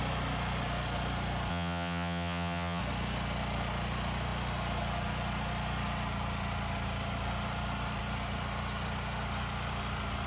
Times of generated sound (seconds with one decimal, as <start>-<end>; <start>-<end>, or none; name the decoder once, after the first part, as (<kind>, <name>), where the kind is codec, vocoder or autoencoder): 1.5-2.8 (vocoder, HiFi-GAN)